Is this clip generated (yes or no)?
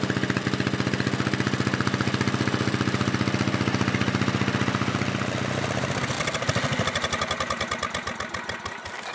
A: no